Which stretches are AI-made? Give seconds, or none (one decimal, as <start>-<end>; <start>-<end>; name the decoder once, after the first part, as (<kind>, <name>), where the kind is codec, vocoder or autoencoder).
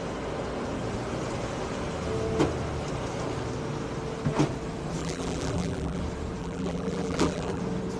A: 5.0-6.0 (vocoder, BigVGAN v2); 6.4-7.6